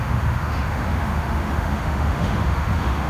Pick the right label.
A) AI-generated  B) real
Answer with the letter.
A